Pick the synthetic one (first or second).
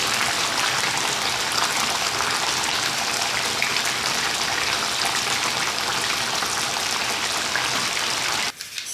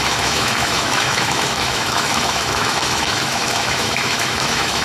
second